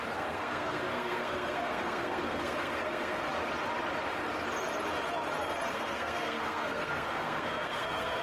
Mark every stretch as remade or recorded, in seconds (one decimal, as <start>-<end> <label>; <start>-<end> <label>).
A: 0.0-3.3 remade; 3.3-5.7 recorded; 5.7-8.2 remade